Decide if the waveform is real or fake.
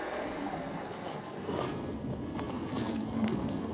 fake